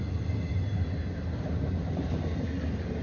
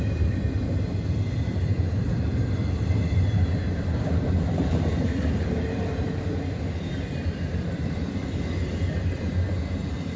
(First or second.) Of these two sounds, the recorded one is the first